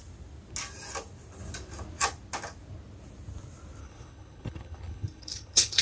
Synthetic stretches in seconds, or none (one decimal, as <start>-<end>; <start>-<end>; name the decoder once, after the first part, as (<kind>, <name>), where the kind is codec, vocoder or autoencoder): 3.8-5.8 (codec, HILCodec)

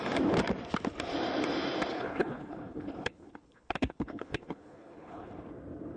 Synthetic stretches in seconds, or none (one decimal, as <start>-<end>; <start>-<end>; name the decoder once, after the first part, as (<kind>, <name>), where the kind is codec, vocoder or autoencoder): 1.9-5.3 (codec, HILCodec)

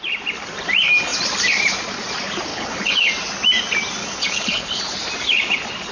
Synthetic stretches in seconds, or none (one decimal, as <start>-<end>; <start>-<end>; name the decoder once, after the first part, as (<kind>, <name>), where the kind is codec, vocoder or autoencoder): 2.5-3.1 (codec, HILCodec); 4.0-4.8

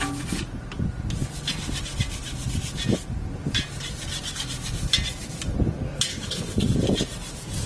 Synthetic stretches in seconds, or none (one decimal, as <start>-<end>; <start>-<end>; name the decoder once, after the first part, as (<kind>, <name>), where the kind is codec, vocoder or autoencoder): 6.1-6.6 (codec, HILCodec)

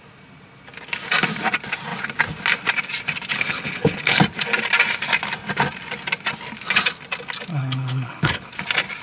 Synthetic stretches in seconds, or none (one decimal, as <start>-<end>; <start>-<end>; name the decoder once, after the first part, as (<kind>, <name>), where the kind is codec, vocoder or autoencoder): 3.3-4.2 (codec, HILCodec); 7.5-8.5

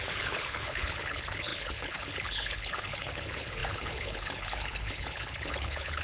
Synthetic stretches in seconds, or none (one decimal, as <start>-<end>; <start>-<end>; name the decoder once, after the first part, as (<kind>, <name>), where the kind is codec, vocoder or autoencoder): 0.0-6.0 (codec, HILCodec)